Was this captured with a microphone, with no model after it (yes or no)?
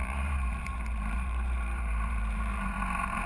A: no